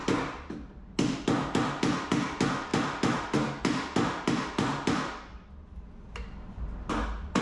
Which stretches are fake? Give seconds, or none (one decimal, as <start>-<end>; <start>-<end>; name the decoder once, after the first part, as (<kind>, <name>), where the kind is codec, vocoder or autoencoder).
none